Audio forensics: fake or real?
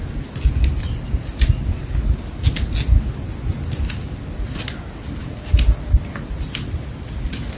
real